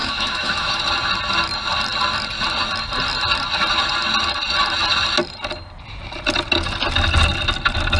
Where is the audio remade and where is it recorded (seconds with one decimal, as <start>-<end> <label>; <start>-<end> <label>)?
0.0-0.8 remade; 0.8-8.0 recorded